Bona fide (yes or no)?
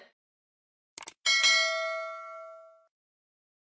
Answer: yes